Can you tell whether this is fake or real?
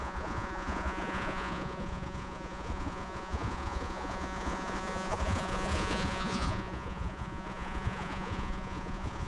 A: fake